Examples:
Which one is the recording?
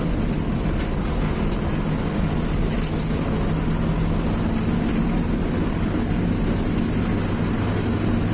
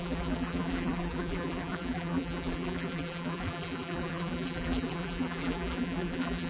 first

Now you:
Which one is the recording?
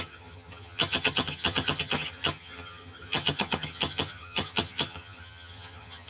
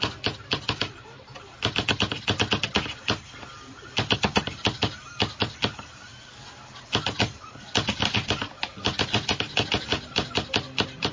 second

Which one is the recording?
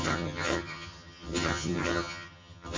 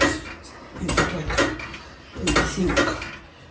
second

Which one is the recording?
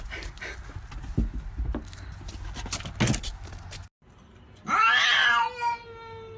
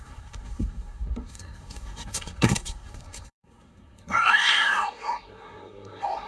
first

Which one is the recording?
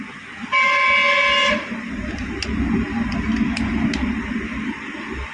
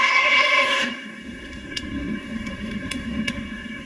first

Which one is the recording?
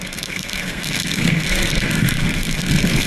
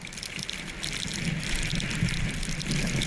second